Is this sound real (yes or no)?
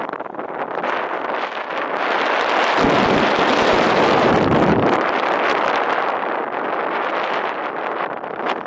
yes